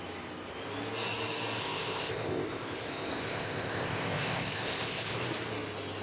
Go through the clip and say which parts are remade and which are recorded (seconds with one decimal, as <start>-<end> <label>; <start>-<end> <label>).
0.0-1.6 recorded; 1.6-5.2 remade; 5.2-6.0 recorded